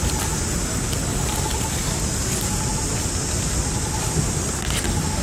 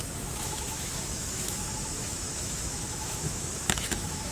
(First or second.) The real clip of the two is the first